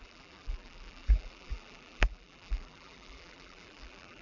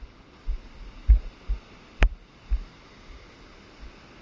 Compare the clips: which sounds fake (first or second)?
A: first